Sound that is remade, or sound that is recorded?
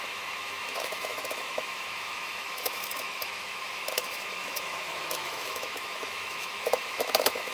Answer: remade